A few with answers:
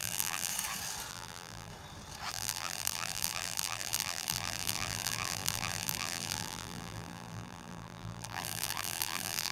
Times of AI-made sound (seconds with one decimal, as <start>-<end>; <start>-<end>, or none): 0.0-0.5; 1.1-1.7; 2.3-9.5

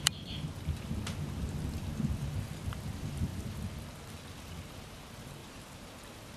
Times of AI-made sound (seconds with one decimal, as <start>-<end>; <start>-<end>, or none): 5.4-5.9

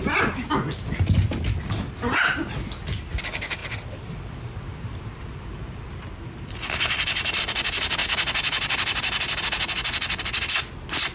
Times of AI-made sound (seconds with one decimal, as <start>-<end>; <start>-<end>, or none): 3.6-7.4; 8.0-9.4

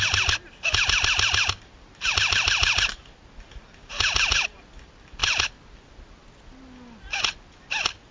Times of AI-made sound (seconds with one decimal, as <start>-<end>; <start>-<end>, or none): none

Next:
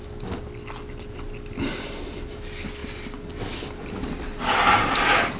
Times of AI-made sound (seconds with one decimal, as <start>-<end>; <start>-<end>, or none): none